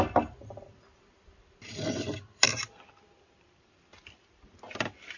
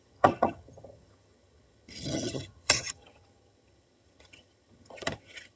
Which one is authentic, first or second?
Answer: first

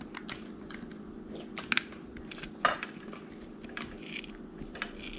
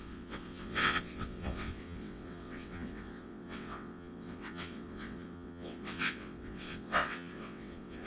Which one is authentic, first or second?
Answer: first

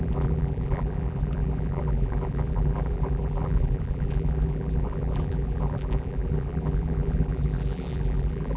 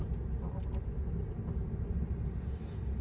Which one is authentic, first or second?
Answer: second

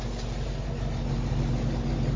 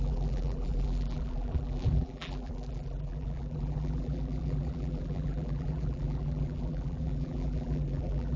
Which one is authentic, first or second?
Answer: first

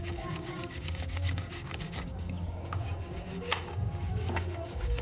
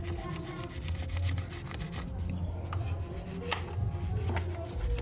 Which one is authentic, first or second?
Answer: second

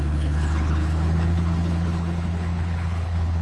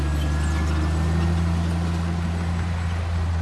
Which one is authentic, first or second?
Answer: second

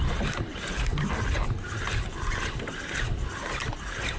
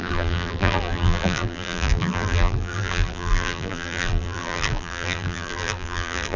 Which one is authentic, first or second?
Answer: first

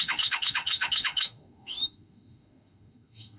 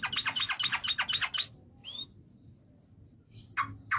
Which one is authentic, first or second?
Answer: second